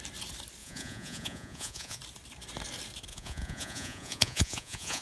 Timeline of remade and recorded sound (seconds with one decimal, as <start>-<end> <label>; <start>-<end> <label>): 0.0-0.6 recorded; 0.6-2.0 remade; 2.0-3.1 recorded; 3.1-5.0 remade